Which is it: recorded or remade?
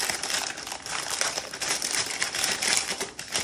remade